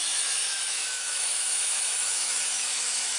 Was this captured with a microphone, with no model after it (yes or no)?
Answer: no